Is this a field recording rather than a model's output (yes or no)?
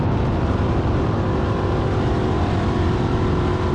no